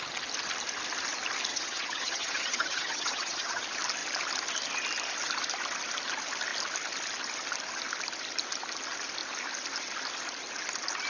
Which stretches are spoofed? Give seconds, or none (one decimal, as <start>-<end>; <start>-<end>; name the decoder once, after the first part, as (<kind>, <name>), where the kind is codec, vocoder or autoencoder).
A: 1.5-3.6 (vocoder, HiFi-GAN)